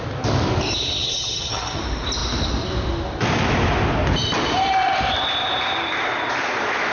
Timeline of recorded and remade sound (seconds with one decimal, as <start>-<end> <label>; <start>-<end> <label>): 0.0-1.0 recorded; 1.0-1.8 remade; 1.8-6.9 recorded